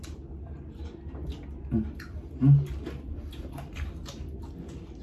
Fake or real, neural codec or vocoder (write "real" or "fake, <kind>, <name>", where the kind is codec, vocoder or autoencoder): real